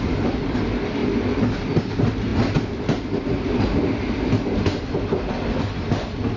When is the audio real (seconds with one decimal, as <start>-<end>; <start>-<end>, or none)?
0.0-6.4